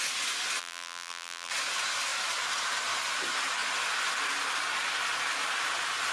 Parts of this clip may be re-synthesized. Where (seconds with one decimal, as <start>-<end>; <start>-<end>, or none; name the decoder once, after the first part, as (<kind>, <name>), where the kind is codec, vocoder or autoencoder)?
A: 0.6-1.5 (vocoder, BigVGAN v2)